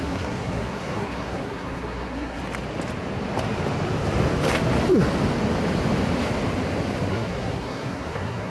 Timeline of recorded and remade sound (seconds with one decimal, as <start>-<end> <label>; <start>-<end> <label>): 0.0-2.4 remade; 2.4-7.1 recorded; 7.1-8.5 remade

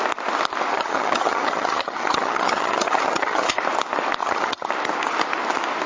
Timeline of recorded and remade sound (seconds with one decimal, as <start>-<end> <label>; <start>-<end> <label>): 0.0-0.7 recorded; 0.7-3.6 remade; 3.6-4.2 recorded; 4.2-4.7 remade; 4.7-5.9 recorded

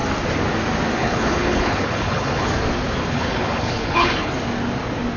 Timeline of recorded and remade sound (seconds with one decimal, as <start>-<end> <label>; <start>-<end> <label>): 0.0-1.0 recorded; 1.0-2.5 remade; 2.5-3.0 recorded; 3.0-4.3 remade; 4.3-5.2 recorded

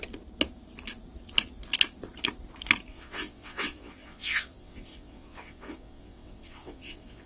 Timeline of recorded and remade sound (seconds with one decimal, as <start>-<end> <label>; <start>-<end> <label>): 0.0-2.9 recorded; 2.9-7.3 remade

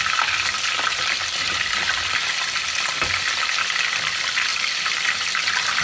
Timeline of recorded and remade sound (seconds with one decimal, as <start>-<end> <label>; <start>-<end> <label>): 0.0-5.8 recorded

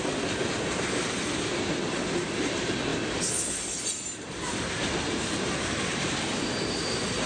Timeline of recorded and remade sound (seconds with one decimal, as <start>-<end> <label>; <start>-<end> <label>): 0.0-7.3 recorded